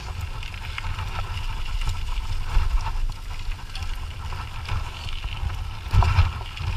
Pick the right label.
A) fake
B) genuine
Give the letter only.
B